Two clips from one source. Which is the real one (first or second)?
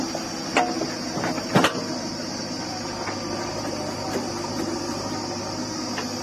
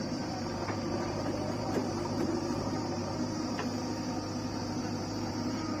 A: first